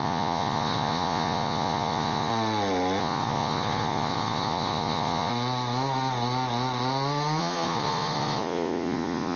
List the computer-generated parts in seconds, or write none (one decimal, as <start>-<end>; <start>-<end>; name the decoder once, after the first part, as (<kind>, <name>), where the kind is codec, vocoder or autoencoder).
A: 0.0-2.3 (vocoder, Vocos); 3.0-5.3; 7.4-9.4